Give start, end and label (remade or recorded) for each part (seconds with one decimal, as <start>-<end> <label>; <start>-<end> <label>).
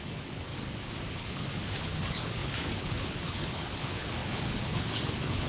0.0-0.5 remade; 0.5-1.1 recorded; 1.1-5.5 remade